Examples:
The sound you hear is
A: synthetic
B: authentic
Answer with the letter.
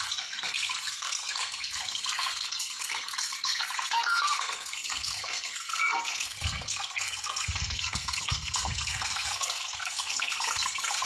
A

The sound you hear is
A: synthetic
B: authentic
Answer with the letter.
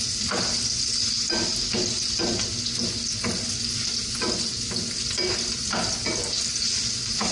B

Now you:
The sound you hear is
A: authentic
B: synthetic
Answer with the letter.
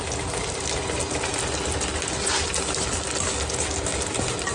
A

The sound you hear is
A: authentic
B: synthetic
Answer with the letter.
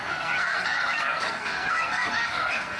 B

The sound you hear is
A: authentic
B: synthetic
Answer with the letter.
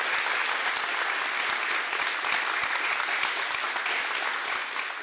A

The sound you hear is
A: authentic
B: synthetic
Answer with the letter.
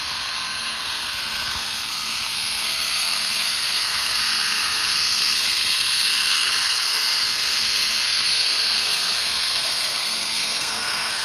B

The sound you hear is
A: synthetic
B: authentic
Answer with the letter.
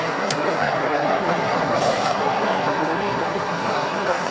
A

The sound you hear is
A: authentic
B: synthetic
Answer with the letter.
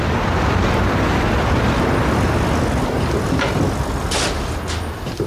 A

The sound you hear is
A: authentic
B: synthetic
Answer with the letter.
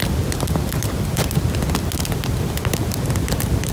A